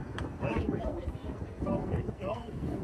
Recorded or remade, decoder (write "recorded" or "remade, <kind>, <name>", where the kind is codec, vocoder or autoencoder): remade, codec, SNAC